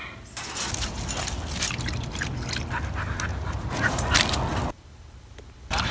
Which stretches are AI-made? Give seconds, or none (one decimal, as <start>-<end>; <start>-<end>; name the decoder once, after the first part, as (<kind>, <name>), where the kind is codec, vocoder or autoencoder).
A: 3.3-4.0 (vocoder, Vocos)